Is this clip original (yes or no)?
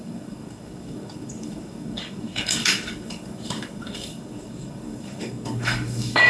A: no